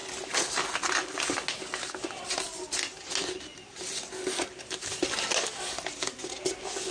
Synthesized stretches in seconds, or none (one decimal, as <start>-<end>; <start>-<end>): 0.0-1.2